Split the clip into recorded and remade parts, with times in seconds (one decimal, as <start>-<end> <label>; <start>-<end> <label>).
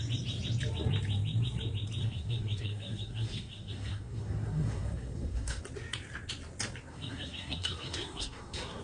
0.0-2.0 recorded; 2.0-5.6 remade; 5.6-6.9 recorded; 6.9-8.8 remade